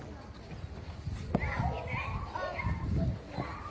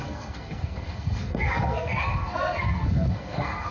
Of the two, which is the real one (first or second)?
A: first